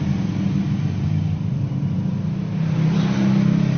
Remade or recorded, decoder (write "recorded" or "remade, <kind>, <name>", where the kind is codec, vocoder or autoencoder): recorded